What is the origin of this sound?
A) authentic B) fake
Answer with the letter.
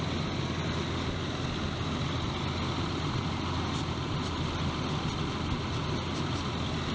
A